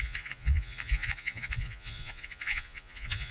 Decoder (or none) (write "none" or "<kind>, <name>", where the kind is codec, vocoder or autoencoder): vocoder, Vocos